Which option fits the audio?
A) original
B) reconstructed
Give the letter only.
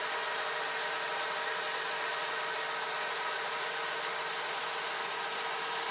A